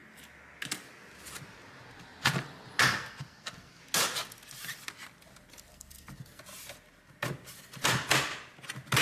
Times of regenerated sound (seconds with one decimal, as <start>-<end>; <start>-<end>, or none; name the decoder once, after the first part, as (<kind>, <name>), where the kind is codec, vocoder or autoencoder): 2.9-3.8 (codec, SNAC); 5.7-6.4